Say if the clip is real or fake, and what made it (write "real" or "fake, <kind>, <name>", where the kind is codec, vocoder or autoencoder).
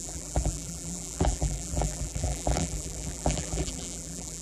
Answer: fake, vocoder, BigVGAN v2